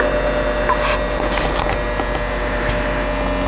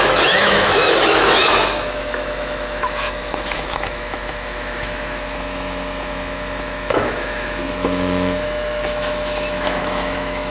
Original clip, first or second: first